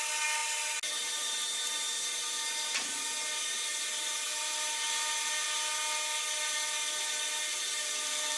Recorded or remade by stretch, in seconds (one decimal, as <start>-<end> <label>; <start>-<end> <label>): 0.0-8.4 recorded